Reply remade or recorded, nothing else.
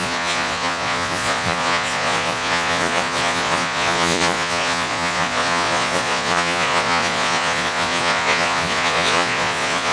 remade